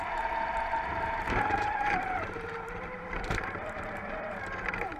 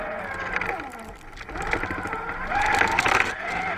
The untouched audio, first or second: second